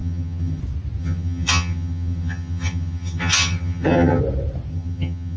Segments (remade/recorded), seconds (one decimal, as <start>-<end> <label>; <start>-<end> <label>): 0.0-0.6 remade; 0.6-1.0 recorded; 1.0-4.2 remade; 4.2-4.7 recorded; 4.7-5.4 remade